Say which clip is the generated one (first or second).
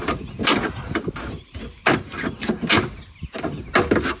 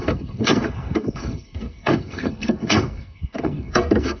second